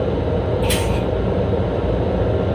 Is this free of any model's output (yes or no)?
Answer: yes